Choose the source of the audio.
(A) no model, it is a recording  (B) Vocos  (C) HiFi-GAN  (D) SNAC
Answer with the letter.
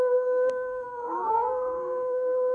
D